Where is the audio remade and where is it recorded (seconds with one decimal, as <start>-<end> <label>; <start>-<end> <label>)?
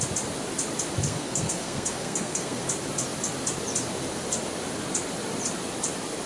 0.0-1.1 recorded; 1.1-2.6 remade; 2.6-6.3 recorded